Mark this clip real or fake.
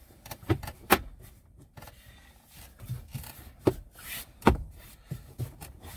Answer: fake